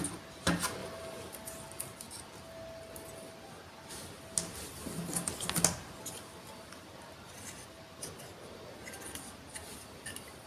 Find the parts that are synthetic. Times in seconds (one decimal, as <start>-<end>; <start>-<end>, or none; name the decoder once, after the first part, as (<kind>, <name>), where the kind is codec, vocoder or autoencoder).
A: none